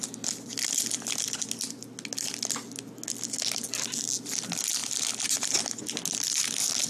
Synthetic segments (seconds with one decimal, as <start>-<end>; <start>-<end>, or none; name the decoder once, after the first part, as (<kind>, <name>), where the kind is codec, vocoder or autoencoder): none